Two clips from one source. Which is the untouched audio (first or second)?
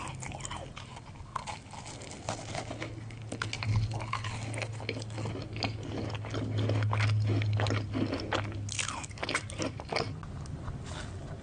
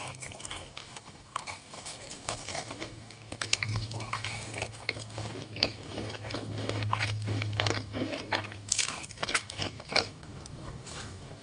first